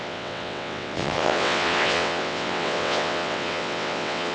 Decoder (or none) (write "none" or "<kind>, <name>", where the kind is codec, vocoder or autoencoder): vocoder, WaveNeXt